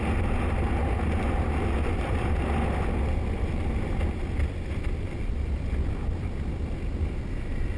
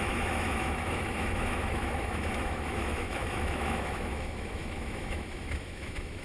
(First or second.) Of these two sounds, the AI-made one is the second